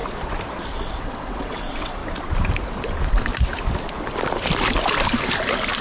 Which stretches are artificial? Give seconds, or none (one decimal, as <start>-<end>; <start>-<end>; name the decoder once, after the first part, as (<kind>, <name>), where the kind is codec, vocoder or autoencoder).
0.8-2.0 (vocoder, WaveNeXt)